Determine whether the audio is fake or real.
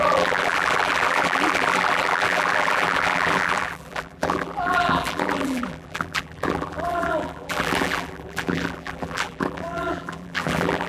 fake